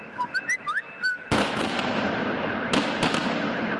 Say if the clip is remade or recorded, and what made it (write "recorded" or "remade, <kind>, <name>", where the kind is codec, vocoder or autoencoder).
recorded